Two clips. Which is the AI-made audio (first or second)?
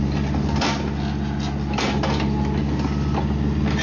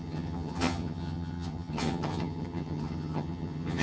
second